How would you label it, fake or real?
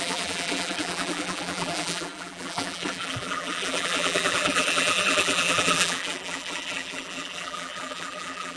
fake